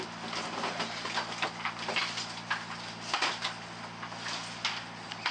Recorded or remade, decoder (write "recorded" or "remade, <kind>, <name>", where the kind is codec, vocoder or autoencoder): recorded